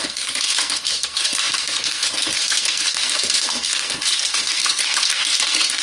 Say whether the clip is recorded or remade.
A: remade